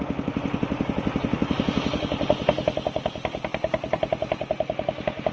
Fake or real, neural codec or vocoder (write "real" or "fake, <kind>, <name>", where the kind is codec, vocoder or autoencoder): real